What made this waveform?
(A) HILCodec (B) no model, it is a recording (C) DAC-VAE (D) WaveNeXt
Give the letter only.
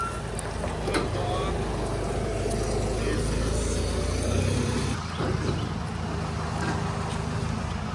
B